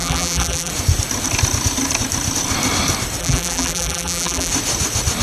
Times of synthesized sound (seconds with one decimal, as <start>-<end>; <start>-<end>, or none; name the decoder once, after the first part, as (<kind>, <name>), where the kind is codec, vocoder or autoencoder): 0.0-0.7 (vocoder, BigVGAN v2); 3.2-4.5